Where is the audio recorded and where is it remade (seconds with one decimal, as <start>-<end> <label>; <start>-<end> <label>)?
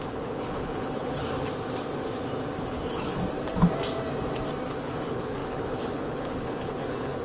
0.0-1.2 remade; 1.2-2.6 recorded; 2.6-3.2 remade; 3.2-4.7 recorded; 4.7-7.2 remade